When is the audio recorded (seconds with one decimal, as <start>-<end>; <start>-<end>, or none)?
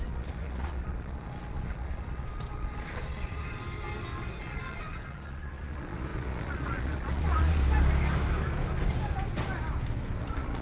3.6-4.4; 7.6-10.2